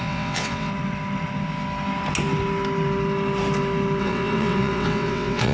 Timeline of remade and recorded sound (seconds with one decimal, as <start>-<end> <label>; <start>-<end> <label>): 0.0-0.7 remade; 0.7-4.0 recorded; 4.0-5.5 remade